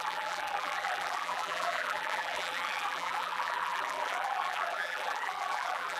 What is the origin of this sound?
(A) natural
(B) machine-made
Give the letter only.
B